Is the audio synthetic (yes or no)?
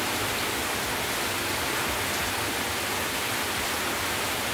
no